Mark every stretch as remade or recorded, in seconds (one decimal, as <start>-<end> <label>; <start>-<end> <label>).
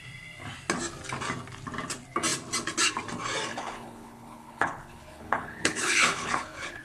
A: 0.0-3.5 recorded; 3.5-6.8 remade